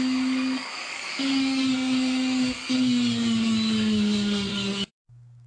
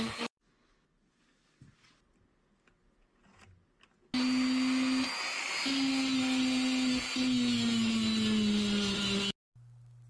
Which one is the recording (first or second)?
second